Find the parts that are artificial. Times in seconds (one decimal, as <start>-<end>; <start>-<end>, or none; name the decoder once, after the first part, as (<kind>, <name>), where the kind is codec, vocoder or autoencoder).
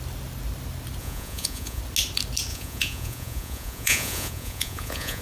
1.0-1.8 (vocoder, Vocos); 2.5-5.2